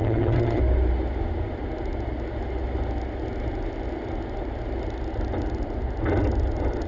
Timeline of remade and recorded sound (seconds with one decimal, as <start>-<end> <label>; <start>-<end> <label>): 0.0-0.6 remade; 0.6-6.9 recorded